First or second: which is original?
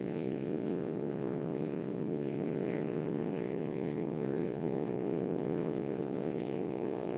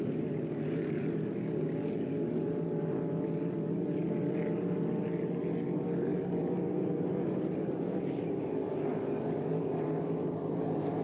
second